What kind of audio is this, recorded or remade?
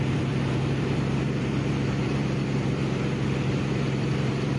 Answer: remade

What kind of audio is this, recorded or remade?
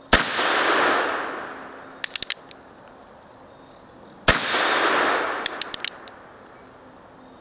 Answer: recorded